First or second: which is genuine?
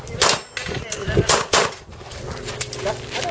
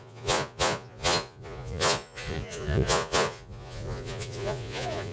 first